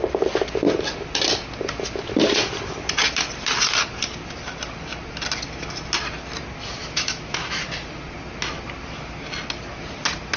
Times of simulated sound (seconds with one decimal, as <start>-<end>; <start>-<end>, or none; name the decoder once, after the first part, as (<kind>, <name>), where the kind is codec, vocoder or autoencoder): 6.8-7.6 (autoencoder, DAC-VAE)